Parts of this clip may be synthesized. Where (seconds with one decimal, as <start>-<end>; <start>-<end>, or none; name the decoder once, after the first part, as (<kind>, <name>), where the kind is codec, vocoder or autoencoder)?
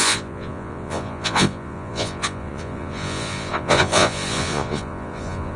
0.0-5.6 (vocoder, Vocos)